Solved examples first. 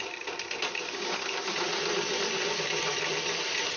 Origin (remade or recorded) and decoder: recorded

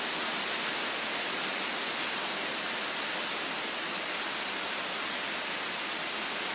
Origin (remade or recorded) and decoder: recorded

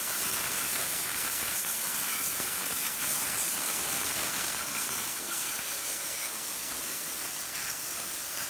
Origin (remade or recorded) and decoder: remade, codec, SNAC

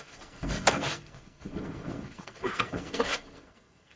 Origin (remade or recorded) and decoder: remade, codec, SNAC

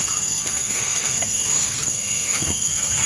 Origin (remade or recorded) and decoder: remade, codec, SNAC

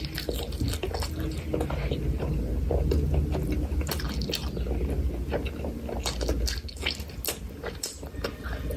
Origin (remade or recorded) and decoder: recorded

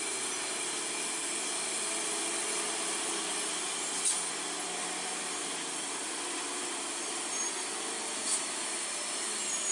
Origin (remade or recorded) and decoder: recorded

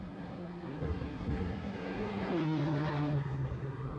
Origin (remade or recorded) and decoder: remade, codec, SNAC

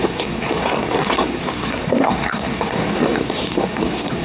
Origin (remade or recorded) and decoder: remade, codec, SNAC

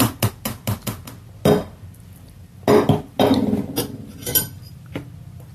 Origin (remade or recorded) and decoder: recorded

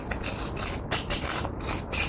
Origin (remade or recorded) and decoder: recorded